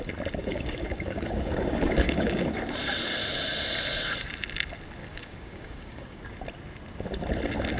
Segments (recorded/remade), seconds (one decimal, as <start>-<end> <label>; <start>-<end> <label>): 0.0-0.4 recorded; 0.4-2.6 remade; 2.6-5.0 recorded; 5.0-6.2 remade; 6.2-7.8 recorded

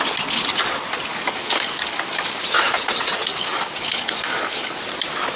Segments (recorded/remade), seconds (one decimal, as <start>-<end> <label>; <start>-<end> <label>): 0.0-1.1 recorded; 1.1-2.4 remade; 2.4-3.3 recorded; 3.3-4.8 remade; 4.8-5.4 recorded

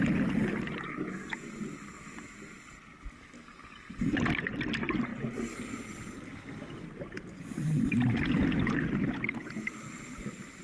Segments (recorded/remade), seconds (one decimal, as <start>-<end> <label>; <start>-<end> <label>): 0.0-10.6 recorded